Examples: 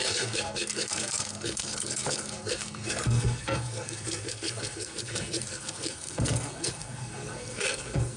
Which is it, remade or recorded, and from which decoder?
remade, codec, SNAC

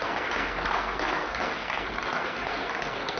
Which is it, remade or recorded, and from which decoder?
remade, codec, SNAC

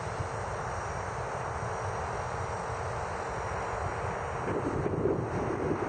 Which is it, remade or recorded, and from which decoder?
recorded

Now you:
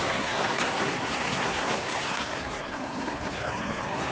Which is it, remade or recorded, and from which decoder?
remade, codec, SNAC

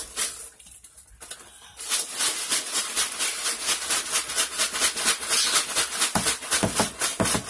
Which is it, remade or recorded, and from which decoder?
recorded